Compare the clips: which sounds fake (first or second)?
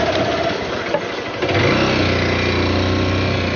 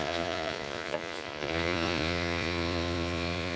second